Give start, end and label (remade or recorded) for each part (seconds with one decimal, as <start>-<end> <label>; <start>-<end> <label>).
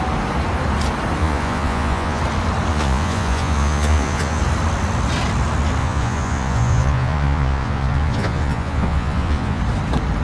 0.0-1.2 recorded; 1.2-2.2 remade; 2.2-2.7 recorded; 2.7-4.4 remade; 4.4-5.8 recorded; 5.8-9.6 remade; 9.6-10.2 recorded